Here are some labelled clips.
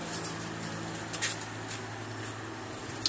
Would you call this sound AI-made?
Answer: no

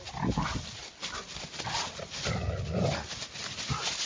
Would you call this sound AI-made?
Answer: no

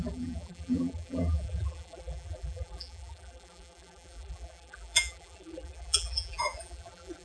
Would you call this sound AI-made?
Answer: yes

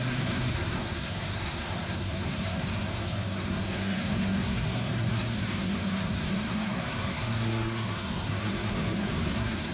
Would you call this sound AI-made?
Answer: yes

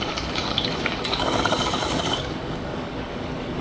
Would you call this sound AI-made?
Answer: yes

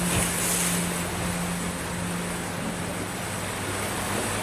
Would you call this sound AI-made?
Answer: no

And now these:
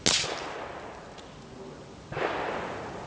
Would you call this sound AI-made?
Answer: no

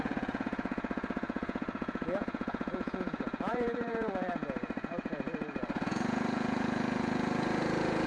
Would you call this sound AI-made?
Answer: yes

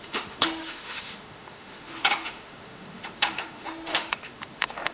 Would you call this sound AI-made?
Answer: yes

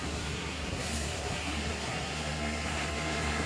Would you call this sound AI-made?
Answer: yes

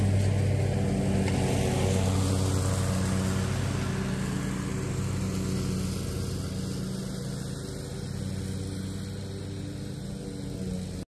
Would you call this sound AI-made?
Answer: no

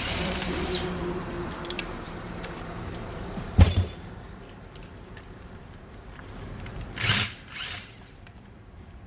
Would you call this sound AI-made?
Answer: yes